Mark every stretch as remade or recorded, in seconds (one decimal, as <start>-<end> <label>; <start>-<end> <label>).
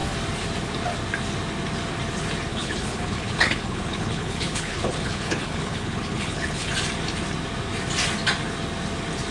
0.0-2.5 recorded; 2.5-6.7 remade; 6.7-9.3 recorded